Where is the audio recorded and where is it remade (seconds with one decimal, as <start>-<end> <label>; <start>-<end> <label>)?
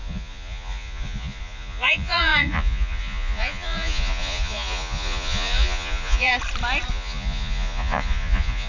0.0-6.3 remade; 6.3-6.9 recorded; 6.9-8.7 remade